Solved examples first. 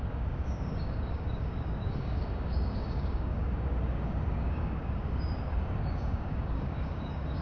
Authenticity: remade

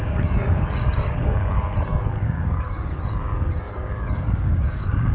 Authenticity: remade